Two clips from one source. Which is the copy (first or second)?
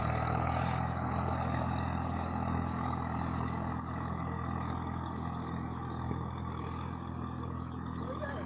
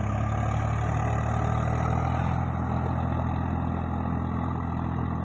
first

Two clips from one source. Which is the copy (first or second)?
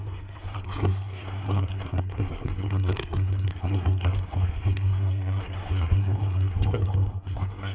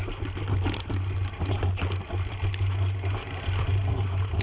first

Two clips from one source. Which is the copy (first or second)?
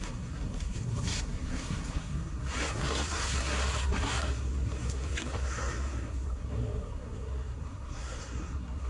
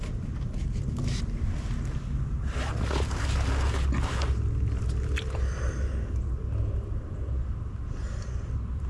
first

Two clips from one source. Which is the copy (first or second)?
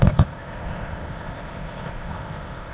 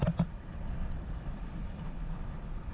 first